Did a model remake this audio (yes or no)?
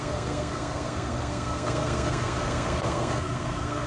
yes